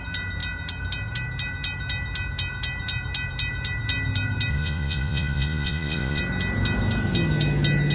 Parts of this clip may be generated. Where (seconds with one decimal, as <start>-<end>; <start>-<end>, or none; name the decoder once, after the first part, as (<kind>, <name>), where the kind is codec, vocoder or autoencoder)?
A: 4.5-6.2 (vocoder, Vocos)